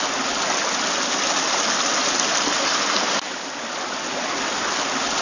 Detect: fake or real real